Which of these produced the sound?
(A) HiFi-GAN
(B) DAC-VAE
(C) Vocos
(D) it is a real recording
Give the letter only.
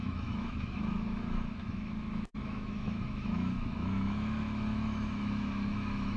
B